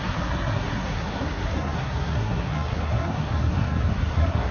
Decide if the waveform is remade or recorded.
remade